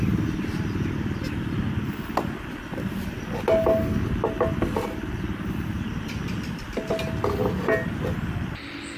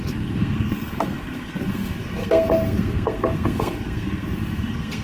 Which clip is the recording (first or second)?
first